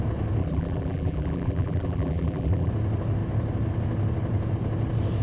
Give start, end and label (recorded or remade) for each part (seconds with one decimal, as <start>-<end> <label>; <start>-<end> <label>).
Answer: 0.0-0.4 recorded; 0.4-2.7 remade; 2.7-5.2 recorded